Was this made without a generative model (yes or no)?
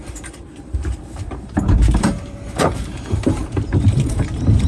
no